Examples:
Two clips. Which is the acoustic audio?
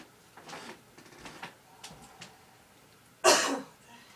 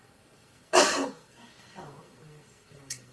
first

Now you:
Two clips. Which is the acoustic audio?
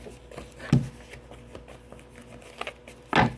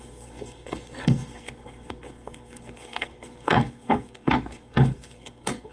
first